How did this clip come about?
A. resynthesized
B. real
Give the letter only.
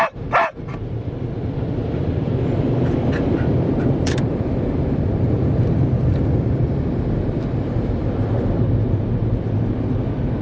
A